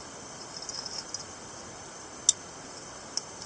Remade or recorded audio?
recorded